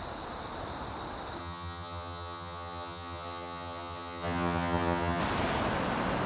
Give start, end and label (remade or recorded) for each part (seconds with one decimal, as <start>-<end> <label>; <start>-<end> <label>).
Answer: 0.0-1.4 recorded; 1.4-5.2 remade; 5.2-6.3 recorded